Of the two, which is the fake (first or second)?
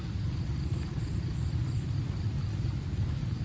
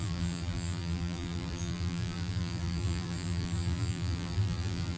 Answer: second